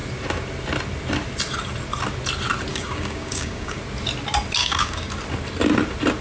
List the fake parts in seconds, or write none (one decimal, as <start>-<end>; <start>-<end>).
2.7-3.8; 4.6-5.1